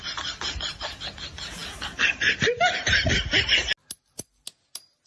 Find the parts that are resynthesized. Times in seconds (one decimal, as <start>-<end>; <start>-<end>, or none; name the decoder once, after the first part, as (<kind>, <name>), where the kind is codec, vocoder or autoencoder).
none